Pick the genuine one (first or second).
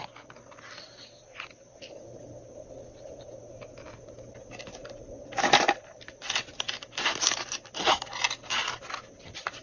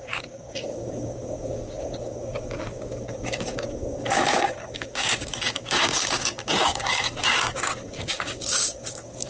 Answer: first